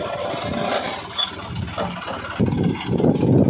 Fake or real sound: real